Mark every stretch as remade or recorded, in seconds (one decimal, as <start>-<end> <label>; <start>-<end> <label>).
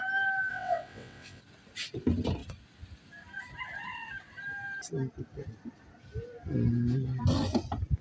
0.0-0.5 recorded; 0.5-1.4 remade; 1.4-8.0 recorded